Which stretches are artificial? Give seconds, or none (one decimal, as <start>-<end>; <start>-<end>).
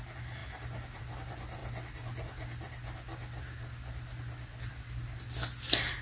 none